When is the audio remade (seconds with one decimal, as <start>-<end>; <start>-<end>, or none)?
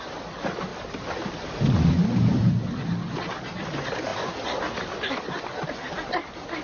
0.7-1.9